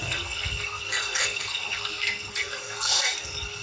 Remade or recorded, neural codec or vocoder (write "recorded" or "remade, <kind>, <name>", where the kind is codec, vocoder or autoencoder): remade, codec, SNAC